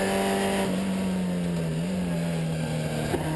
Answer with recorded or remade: recorded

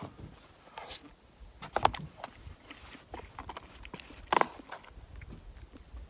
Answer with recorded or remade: recorded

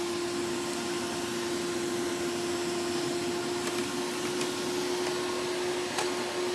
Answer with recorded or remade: recorded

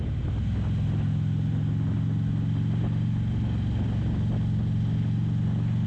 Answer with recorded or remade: recorded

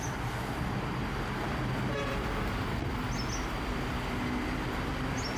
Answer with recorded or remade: recorded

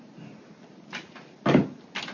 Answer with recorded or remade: recorded